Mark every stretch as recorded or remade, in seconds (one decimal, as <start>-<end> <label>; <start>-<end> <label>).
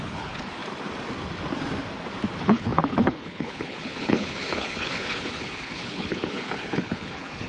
0.0-0.6 remade; 0.6-2.3 recorded; 2.3-7.5 remade